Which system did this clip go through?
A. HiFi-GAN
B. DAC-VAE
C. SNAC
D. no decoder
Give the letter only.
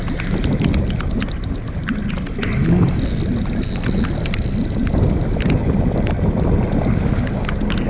D